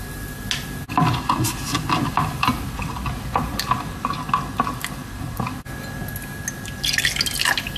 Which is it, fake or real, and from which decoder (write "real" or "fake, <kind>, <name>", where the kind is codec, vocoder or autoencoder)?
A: real